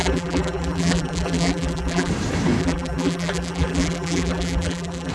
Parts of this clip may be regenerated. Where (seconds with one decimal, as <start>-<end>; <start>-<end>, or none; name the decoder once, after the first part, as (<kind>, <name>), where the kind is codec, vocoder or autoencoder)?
0.0-2.1 (vocoder, BigVGAN v2); 2.6-5.1